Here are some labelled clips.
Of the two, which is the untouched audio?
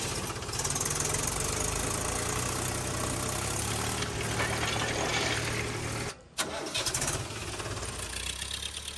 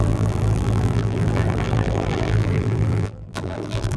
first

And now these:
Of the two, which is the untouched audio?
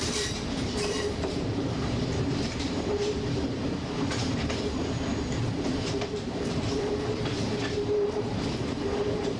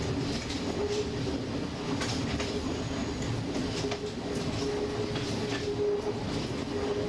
second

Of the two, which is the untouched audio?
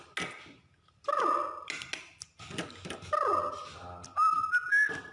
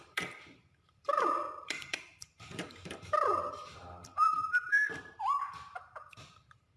first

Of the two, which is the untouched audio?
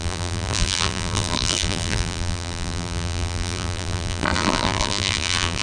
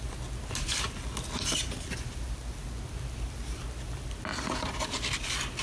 second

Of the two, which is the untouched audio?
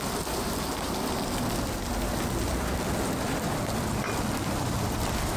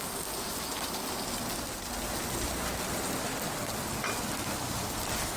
second